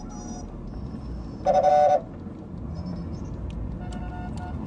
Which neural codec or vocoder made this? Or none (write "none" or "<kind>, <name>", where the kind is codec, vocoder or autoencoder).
none